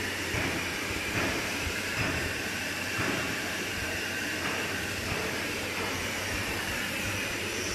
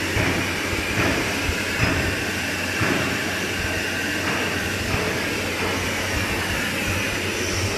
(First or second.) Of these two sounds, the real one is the second